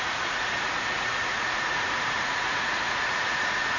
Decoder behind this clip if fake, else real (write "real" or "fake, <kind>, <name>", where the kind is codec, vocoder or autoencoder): fake, vocoder, Vocos